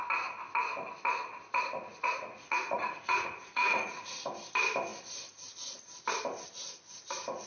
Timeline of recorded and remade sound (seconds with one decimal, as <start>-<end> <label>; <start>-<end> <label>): 0.0-1.9 recorded; 1.9-4.3 remade; 4.3-7.5 recorded